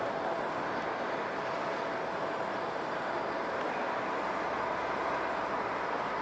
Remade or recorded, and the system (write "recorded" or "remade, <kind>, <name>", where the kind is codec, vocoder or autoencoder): recorded